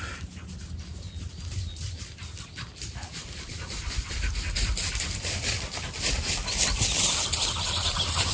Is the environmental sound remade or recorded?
recorded